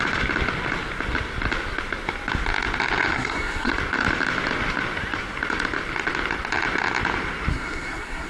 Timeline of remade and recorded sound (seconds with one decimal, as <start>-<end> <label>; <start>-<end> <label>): 0.0-3.1 recorded; 3.1-3.7 remade; 3.7-7.5 recorded; 7.5-8.3 remade